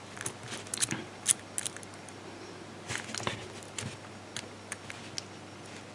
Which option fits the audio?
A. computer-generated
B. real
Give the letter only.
B